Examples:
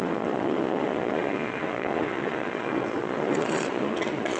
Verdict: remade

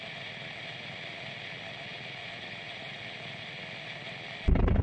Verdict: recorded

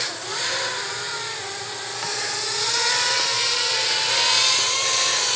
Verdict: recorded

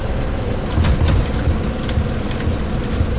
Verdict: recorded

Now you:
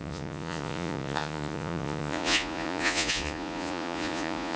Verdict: remade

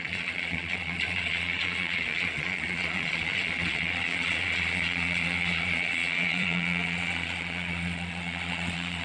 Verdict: remade